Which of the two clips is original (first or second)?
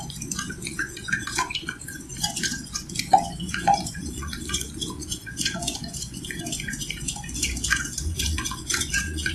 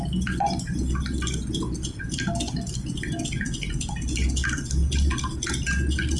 second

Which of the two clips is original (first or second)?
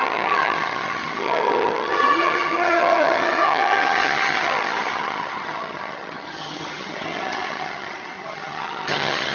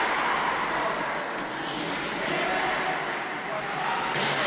second